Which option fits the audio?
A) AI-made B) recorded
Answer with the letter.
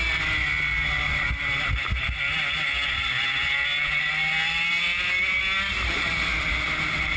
B